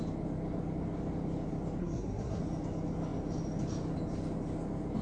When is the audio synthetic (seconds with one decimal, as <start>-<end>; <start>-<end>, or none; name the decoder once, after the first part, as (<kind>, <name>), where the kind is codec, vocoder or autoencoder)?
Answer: 1.8-2.4 (codec, SNAC)